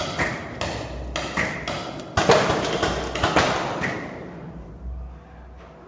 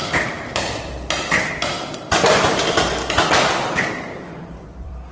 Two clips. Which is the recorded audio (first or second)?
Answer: first